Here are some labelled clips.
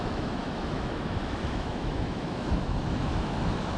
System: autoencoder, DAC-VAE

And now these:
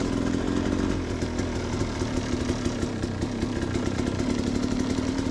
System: none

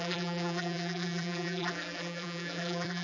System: vocoder, BigVGAN v2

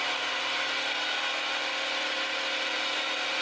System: none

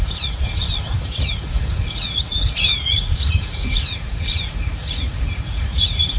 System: vocoder, Vocos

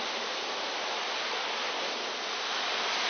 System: none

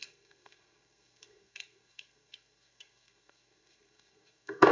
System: codec, SNAC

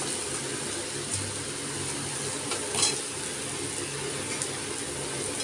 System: none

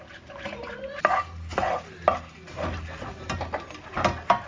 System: none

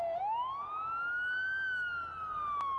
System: none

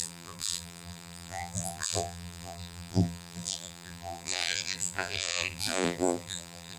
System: vocoder, BigVGAN v2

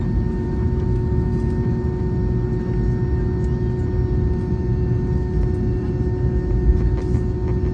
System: none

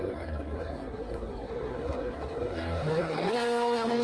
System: codec, SNAC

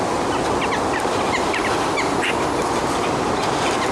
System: none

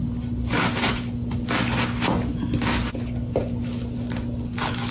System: none